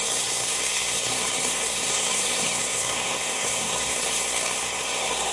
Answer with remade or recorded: remade